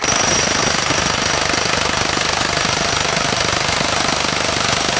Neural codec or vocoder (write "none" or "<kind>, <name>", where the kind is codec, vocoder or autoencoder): none